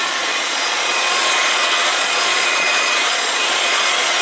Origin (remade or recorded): remade